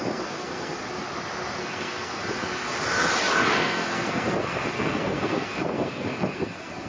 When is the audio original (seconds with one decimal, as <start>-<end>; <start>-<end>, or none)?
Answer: 0.8-1.6; 2.2-3.5